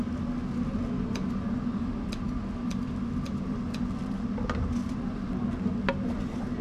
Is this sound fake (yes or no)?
no